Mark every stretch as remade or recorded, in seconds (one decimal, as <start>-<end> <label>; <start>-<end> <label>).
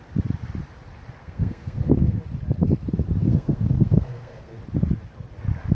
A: 0.0-1.2 recorded; 1.2-2.2 remade; 2.2-3.2 recorded; 3.2-4.6 remade; 4.6-5.7 recorded